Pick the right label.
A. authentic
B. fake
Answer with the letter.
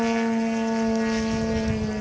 A